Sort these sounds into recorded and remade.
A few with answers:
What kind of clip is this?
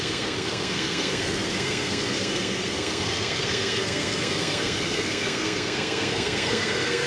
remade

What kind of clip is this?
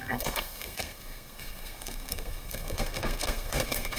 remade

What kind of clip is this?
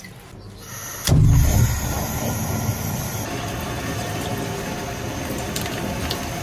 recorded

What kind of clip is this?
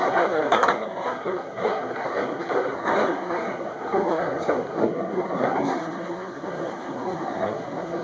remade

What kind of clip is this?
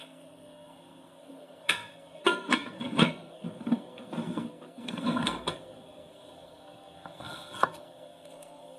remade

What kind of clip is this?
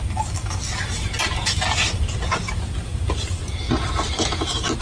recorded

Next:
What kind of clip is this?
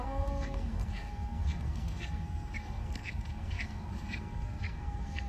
remade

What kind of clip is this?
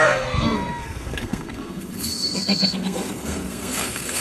remade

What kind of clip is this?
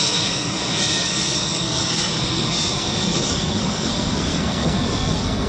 remade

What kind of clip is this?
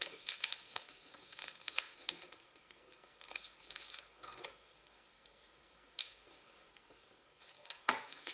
remade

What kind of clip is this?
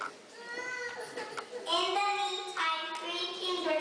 recorded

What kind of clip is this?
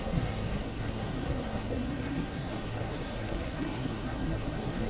remade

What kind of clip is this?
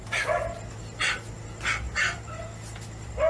recorded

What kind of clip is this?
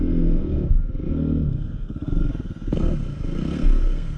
remade